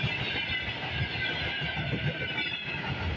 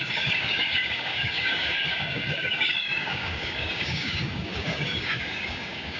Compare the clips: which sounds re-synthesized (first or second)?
second